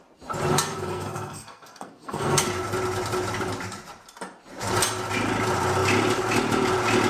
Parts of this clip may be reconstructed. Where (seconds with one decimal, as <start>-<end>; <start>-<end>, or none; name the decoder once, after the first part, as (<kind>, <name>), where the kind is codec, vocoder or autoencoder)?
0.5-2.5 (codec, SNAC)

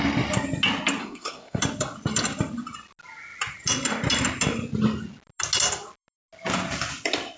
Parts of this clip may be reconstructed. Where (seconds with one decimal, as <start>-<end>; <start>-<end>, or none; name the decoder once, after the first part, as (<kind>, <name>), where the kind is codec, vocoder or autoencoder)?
1.0-1.6 (codec, SNAC)

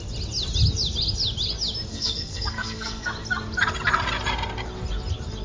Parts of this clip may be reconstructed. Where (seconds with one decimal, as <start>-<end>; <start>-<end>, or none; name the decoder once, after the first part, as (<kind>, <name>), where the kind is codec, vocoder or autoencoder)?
1.9-3.1 (codec, SNAC)